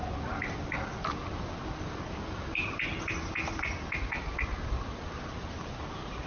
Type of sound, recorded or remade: recorded